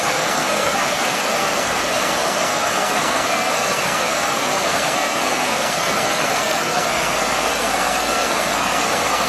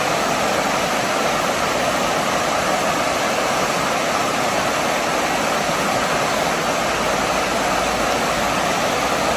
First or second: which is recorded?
second